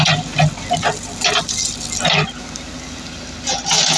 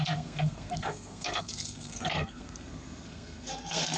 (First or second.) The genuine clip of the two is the first